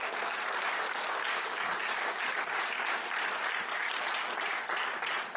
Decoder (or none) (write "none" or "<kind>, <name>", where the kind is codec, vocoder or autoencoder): none